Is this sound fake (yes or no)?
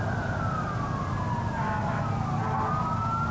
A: no